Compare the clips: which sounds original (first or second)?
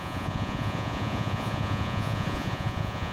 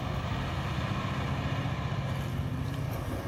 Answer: second